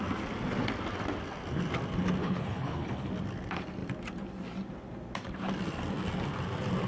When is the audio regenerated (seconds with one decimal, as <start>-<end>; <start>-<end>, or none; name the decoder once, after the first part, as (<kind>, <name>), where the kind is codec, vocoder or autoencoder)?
2.2-3.1 (codec, HILCodec)